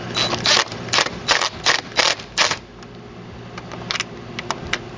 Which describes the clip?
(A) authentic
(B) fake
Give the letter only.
A